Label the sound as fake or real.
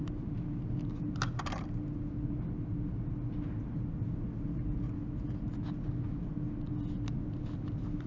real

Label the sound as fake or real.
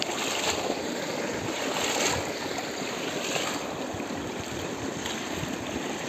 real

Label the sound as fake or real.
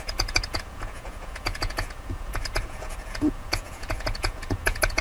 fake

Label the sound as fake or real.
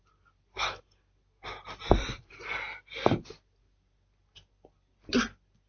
real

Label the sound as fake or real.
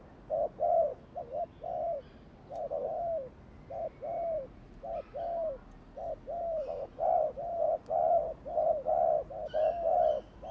real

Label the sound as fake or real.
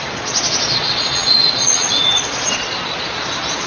fake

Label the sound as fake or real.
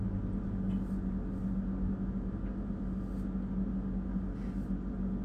real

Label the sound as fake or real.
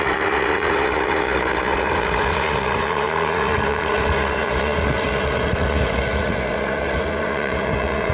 fake